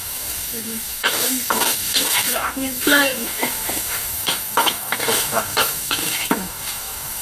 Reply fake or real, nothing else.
fake